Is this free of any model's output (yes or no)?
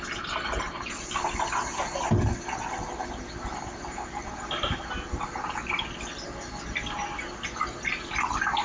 yes